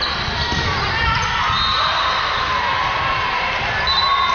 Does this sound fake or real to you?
real